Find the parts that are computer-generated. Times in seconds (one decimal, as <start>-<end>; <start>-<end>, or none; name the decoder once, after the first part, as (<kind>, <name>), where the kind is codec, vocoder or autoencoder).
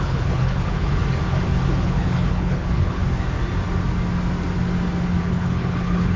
0.0-1.0 (codec, HILCodec); 1.8-3.0; 5.2-6.2